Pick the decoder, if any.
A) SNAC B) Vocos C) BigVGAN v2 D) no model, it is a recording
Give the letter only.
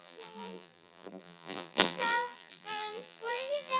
C